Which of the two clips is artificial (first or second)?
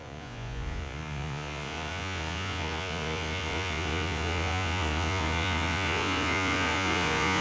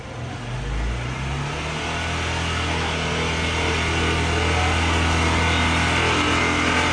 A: first